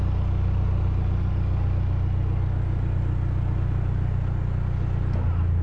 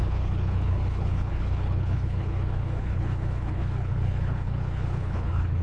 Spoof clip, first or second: second